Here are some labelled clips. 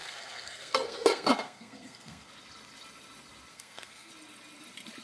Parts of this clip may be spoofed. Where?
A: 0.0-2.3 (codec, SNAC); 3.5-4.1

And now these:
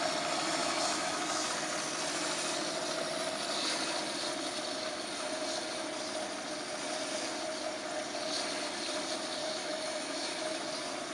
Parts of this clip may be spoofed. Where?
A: 0.6-1.5 (autoencoder, DAC-VAE); 9.4-10.7